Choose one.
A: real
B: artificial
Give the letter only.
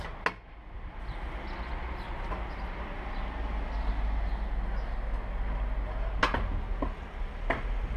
A